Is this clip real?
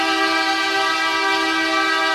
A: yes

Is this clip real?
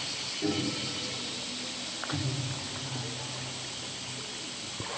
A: yes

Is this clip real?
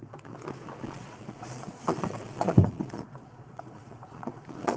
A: no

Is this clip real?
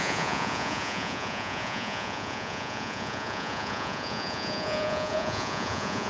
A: no